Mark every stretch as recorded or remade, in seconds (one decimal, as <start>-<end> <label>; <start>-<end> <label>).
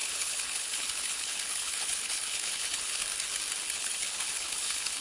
0.0-3.0 remade; 3.0-3.8 recorded; 3.8-5.0 remade